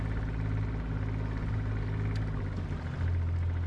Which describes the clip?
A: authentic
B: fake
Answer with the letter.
A